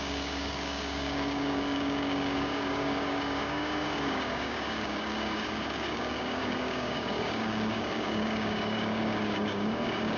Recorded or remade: remade